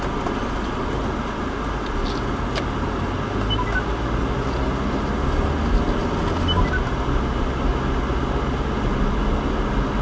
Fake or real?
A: real